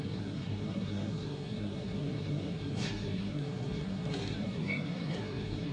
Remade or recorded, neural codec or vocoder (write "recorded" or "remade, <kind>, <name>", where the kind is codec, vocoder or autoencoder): remade, codec, SNAC